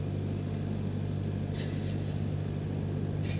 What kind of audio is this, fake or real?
real